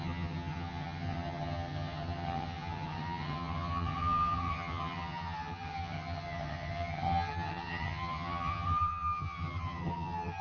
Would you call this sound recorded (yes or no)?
no